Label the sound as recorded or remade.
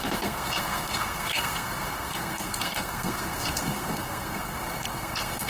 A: remade